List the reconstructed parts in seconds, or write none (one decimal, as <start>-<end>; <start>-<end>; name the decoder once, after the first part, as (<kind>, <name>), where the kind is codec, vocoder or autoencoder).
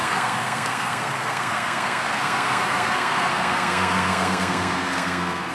0.0-5.5 (codec, SNAC)